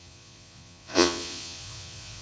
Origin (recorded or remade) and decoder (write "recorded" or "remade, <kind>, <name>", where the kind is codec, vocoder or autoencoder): remade, vocoder, Vocos